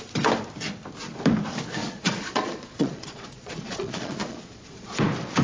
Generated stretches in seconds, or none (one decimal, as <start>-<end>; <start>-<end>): 1.8-5.0